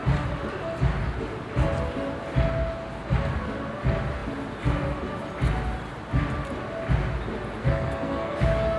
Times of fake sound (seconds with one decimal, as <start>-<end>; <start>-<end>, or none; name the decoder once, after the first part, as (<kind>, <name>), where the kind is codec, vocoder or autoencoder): 7.6-8.3 (codec, SNAC)